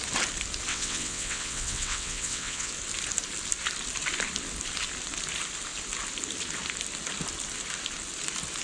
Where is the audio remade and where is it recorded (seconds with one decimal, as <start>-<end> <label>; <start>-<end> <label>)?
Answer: 0.0-0.7 recorded; 0.7-2.7 remade; 2.7-8.6 recorded